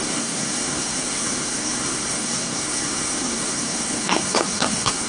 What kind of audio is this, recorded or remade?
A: remade